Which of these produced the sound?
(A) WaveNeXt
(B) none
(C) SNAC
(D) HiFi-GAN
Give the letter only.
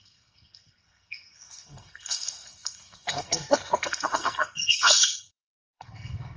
C